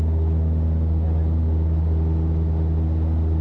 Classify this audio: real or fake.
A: real